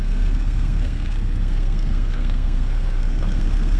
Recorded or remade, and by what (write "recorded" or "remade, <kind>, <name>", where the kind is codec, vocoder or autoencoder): remade, codec, SNAC